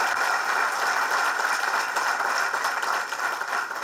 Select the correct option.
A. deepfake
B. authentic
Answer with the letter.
B